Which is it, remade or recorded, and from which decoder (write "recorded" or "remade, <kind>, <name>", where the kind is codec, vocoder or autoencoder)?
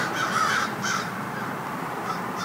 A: recorded